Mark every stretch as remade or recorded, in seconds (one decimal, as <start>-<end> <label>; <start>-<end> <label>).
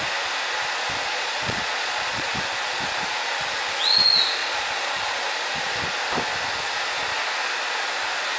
0.0-1.1 recorded; 1.1-2.3 remade; 2.3-4.4 recorded; 4.4-5.3 remade; 5.3-8.4 recorded